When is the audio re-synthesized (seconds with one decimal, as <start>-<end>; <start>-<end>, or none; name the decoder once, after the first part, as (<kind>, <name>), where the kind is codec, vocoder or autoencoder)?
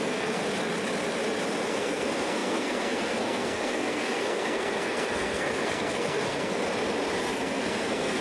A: 0.0-0.4 (codec, SNAC); 1.7-6.6; 7.3-8.2